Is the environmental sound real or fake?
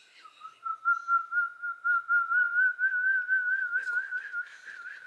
real